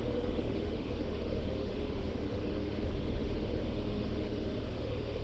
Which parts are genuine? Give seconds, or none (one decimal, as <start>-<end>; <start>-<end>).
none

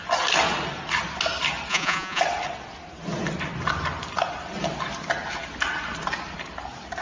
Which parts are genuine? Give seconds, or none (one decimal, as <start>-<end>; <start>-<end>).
0.0-1.7; 2.2-7.0

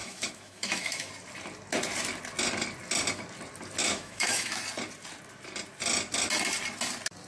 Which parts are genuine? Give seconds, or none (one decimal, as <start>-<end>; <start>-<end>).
1.1-3.8; 4.6-7.3

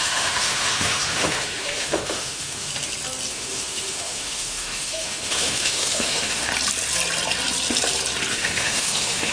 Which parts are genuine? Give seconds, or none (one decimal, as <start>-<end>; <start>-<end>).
2.7-3.3; 6.5-8.3

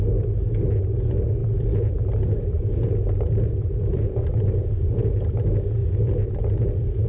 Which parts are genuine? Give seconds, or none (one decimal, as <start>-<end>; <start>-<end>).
0.0-1.4; 4.9-5.8

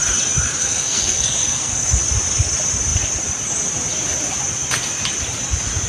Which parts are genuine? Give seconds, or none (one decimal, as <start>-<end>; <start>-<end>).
0.0-0.6; 2.0-5.9